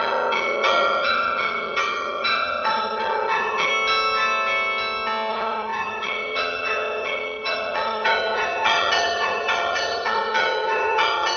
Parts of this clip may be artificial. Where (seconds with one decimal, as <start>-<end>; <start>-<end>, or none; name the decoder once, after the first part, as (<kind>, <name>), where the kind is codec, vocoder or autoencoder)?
0.0-3.7 (vocoder, HiFi-GAN); 5.3-11.4